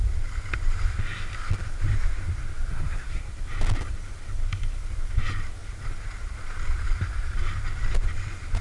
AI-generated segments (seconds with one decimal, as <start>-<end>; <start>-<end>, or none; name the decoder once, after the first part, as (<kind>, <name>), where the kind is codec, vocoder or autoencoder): 2.7-3.3 (codec, SNAC)